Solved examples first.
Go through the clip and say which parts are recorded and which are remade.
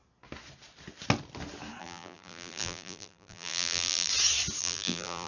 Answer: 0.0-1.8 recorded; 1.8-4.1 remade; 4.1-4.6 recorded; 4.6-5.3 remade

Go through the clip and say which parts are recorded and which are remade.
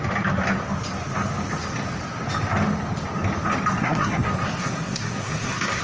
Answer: 0.0-3.8 recorded; 3.8-5.8 remade